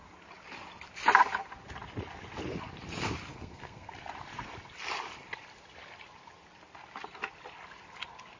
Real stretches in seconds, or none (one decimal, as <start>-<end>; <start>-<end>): 0.0-3.3; 3.9-8.4